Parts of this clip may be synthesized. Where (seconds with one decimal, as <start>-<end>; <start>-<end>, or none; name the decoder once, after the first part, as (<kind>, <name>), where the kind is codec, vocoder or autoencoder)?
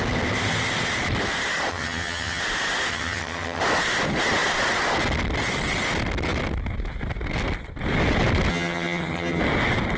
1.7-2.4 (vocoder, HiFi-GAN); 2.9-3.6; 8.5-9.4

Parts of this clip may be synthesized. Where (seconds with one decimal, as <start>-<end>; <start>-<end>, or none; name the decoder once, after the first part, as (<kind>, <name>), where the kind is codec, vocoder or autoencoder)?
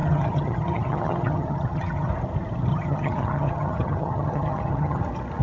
0.0-2.1 (vocoder, HiFi-GAN); 2.7-5.0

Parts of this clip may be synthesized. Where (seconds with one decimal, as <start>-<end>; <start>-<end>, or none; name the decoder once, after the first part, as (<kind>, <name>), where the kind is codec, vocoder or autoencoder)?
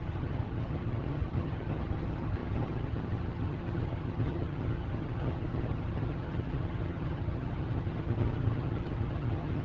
0.0-9.6 (vocoder, HiFi-GAN)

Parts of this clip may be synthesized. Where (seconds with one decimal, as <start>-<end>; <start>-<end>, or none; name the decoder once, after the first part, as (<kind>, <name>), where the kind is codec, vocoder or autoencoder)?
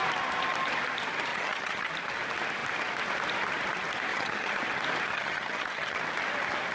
1.3-1.9 (vocoder, HiFi-GAN); 4.1-4.6; 5.1-6.0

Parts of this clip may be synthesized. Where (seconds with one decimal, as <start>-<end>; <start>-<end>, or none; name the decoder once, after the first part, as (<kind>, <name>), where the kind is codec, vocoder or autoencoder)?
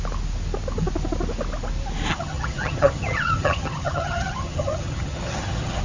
2.1-5.8 (vocoder, HiFi-GAN)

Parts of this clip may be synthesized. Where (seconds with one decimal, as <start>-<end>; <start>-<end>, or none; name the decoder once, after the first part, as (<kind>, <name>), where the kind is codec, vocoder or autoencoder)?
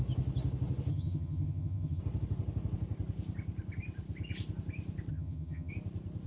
0.9-2.0 (vocoder, HiFi-GAN); 5.1-5.7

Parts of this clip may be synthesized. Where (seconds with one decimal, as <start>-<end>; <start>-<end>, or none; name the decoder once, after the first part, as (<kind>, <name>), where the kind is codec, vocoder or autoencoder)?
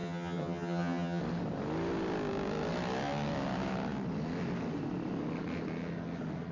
0.0-1.2 (vocoder, HiFi-GAN)